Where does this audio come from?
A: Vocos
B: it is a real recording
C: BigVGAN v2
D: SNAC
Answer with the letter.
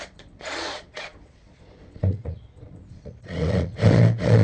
A